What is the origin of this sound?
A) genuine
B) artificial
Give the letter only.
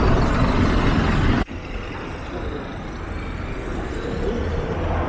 A